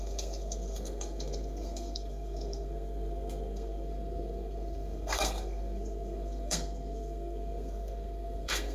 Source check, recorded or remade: remade